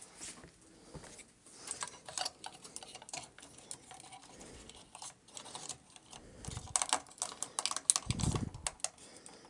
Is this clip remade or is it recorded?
recorded